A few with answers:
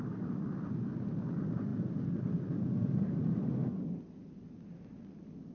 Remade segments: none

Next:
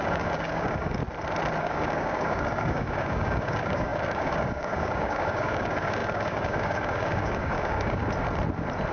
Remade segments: 0.0-1.0 (codec, DAC); 1.6-8.0

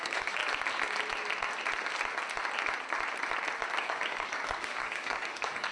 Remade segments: 0.0-0.4 (codec, DAC); 3.8-5.7

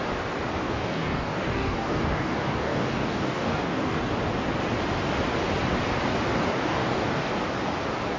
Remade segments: 0.6-4.0 (codec, DAC); 6.5-7.3

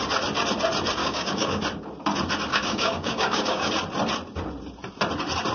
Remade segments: 1.0-1.6 (codec, DAC); 2.5-3.7

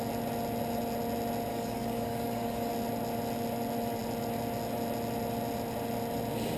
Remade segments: 1.5-2.7 (codec, DAC)